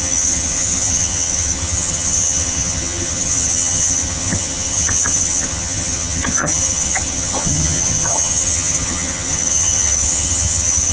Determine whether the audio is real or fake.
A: fake